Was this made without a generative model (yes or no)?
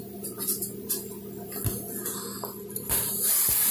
yes